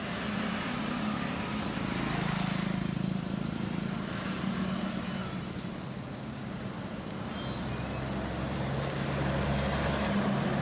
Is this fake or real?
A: real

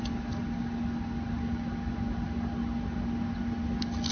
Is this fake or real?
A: real